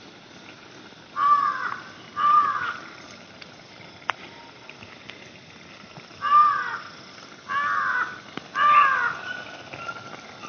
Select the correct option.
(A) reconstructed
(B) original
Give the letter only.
B